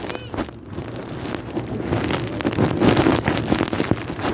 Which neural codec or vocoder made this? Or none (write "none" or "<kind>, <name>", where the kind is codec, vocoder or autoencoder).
none